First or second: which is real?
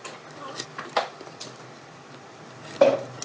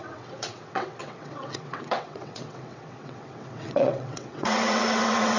first